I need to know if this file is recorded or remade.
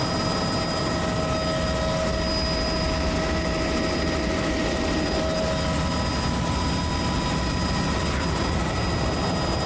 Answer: recorded